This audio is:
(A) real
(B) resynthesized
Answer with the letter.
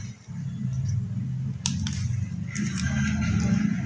A